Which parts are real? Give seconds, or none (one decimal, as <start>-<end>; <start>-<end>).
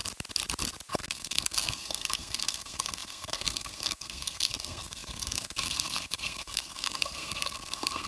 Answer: 0.0-0.9